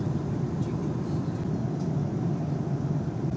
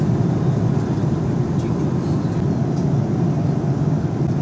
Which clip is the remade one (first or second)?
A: first